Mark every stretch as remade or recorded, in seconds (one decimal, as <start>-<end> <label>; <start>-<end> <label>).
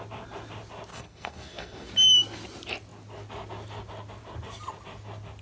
0.0-0.9 recorded; 0.9-1.9 remade; 1.9-5.4 recorded